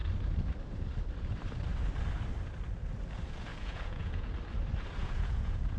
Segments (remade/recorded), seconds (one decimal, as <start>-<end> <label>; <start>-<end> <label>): 0.0-3.5 recorded; 3.5-4.3 remade; 4.3-5.0 recorded; 5.0-5.8 remade